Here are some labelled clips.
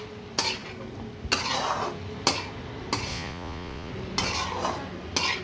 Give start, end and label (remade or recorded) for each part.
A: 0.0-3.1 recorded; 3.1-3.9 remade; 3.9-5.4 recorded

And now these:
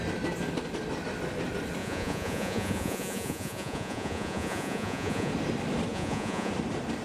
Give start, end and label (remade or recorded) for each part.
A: 0.0-1.8 recorded; 1.8-5.3 remade; 5.3-5.9 recorded; 5.9-6.5 remade; 6.5-7.0 recorded

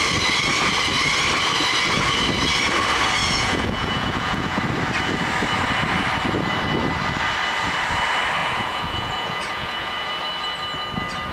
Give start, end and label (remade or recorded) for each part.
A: 0.0-3.2 recorded; 3.2-4.6 remade; 4.6-8.4 recorded; 8.4-10.1 remade; 10.1-11.3 recorded

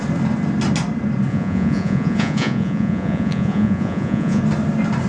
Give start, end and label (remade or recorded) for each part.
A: 0.0-1.3 recorded; 1.3-4.4 remade; 4.4-5.1 recorded